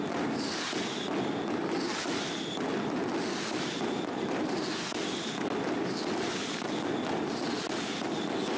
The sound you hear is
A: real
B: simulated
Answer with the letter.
A